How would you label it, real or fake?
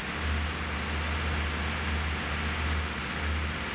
real